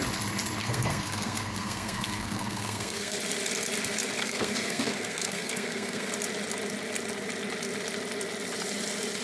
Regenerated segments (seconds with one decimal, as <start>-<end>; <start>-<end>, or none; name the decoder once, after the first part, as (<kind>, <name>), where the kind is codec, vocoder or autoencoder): 0.6-3.2 (codec, SNAC); 4.2-6.1